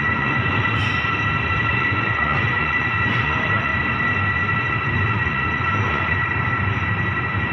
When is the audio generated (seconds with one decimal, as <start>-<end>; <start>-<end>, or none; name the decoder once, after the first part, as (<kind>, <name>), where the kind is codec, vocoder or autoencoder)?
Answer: 0.0-0.8 (vocoder, Vocos); 1.7-3.7; 4.7-6.2